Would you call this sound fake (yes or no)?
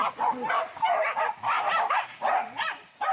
no